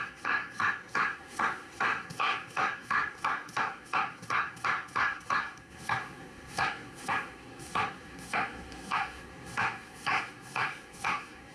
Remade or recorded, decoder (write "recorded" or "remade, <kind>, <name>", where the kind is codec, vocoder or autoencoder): remade, codec, SNAC